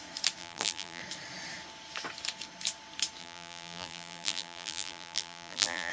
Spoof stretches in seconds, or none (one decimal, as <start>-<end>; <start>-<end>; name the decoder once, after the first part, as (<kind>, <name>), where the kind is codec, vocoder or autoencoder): 0.4-1.0 (vocoder, BigVGAN v2); 3.2-5.9